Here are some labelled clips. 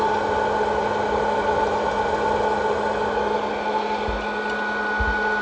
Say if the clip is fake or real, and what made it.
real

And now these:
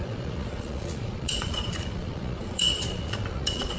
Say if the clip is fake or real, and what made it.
fake, vocoder, Vocos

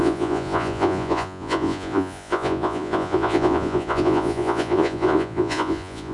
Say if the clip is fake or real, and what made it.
fake, vocoder, Vocos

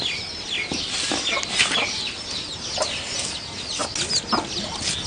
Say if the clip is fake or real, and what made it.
real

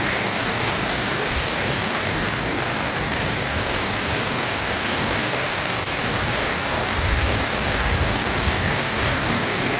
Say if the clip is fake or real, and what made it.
fake, codec, DAC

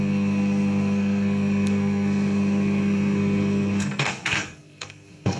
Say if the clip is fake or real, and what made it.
fake, codec, SNAC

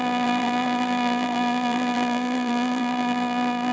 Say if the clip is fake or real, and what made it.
fake, vocoder, BigVGAN v2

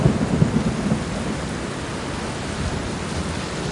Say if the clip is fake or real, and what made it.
real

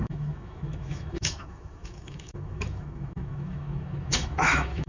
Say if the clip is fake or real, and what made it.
fake, autoencoder, DAC-VAE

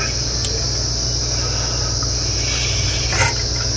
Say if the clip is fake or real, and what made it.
real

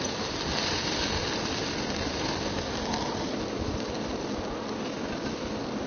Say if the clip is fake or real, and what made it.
real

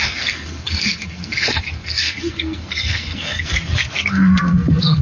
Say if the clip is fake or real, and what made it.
fake, codec, SNAC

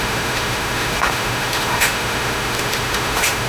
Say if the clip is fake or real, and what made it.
fake, autoencoder, DAC-VAE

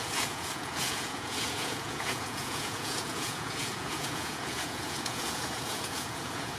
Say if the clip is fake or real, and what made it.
fake, vocoder, Vocos